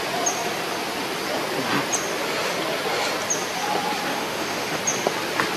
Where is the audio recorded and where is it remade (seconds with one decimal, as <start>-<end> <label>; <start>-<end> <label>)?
0.0-4.1 recorded; 4.1-4.8 remade; 4.8-5.6 recorded